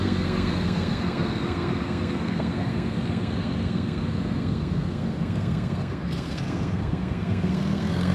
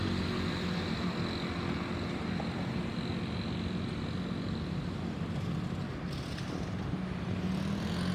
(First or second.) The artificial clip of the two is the first